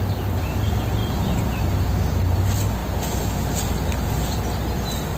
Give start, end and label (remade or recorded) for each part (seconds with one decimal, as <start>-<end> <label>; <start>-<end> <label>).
0.0-1.0 recorded; 1.0-1.8 remade; 1.8-5.2 recorded